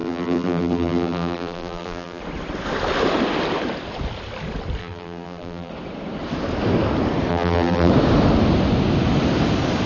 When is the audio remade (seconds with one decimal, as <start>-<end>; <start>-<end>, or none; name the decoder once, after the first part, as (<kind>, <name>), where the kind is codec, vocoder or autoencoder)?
0.0-2.2 (vocoder, BigVGAN v2); 4.8-5.7; 7.3-7.9